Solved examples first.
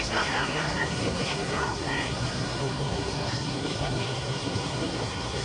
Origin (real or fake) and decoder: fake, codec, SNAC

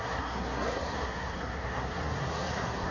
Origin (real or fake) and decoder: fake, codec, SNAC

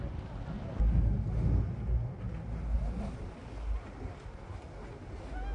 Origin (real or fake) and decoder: real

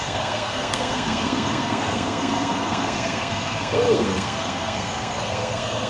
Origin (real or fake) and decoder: fake, codec, SNAC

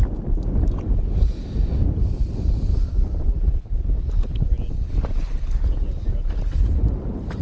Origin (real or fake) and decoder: real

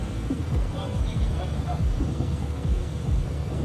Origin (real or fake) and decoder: fake, codec, SNAC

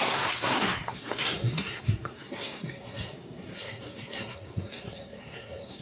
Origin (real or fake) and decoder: fake, codec, SNAC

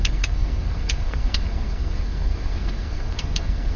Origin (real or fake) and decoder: fake, codec, SNAC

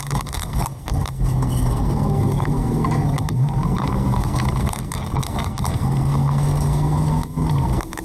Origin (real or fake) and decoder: fake, codec, SNAC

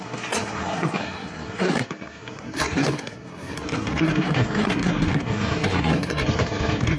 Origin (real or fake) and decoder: fake, codec, SNAC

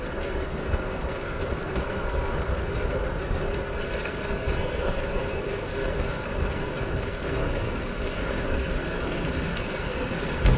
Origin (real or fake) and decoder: fake, codec, SNAC